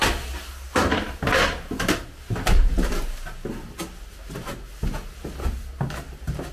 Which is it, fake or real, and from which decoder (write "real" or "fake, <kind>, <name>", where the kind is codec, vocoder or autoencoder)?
real